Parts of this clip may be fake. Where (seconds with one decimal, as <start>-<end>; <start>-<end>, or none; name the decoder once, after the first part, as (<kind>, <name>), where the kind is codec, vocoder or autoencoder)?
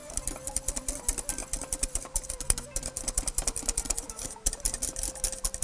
0.0-0.7 (vocoder, BigVGAN v2); 1.4-4.8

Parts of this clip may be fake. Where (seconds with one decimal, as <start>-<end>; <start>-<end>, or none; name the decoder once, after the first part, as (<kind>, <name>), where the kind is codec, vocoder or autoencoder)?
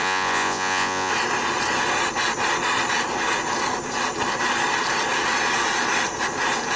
0.0-1.1 (vocoder, Vocos)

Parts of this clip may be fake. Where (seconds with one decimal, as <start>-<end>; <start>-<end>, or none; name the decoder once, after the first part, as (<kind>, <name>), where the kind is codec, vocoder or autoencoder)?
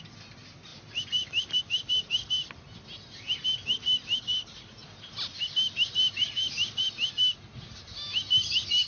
none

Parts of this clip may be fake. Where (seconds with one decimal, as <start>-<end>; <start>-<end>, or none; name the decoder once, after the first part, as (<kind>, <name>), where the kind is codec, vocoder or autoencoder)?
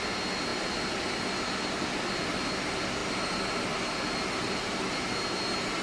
none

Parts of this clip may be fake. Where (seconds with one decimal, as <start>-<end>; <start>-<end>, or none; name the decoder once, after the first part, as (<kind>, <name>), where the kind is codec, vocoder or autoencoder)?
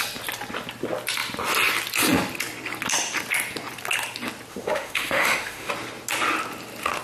4.5-5.7 (autoencoder, DAC-VAE)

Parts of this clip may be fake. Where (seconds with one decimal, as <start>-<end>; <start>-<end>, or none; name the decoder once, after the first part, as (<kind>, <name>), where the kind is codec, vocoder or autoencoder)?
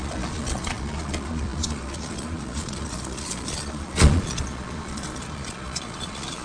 0.0-6.4 (vocoder, Vocos)